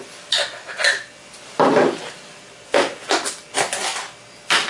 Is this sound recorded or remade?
recorded